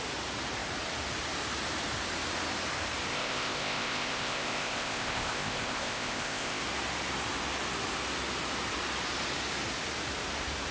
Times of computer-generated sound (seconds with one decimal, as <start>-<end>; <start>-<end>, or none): 3.1-6.6